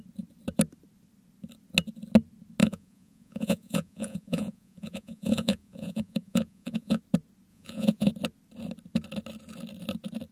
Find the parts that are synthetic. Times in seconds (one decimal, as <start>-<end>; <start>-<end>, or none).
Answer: 2.6-7.0; 7.5-8.1

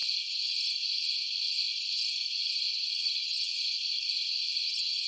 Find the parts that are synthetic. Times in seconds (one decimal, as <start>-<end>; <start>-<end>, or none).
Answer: 2.4-3.5; 4.5-5.1

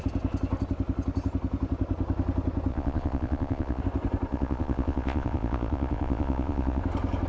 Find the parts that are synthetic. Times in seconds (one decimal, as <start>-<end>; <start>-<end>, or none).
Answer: 2.7-3.8; 4.3-6.8